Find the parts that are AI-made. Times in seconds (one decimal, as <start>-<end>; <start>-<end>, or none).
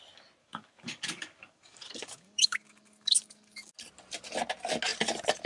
0.4-3.7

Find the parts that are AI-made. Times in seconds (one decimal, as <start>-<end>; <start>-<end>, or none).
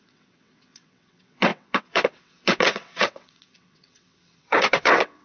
0.0-5.2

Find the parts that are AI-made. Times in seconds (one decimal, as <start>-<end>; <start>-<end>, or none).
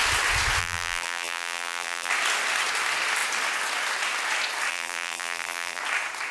0.6-2.1; 4.7-5.8